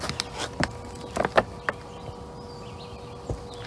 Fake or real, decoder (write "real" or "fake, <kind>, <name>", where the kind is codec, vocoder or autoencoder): real